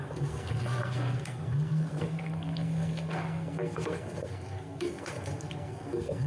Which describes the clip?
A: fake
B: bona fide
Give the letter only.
A